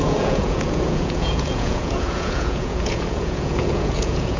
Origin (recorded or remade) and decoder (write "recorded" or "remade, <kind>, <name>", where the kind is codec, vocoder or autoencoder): remade, vocoder, Vocos